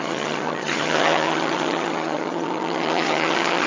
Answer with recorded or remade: remade